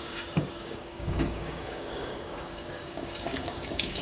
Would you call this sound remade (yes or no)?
yes